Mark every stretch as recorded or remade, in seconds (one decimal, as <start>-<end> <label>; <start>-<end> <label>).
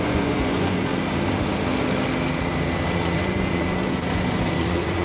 0.0-0.9 remade; 0.9-3.0 recorded; 3.0-5.0 remade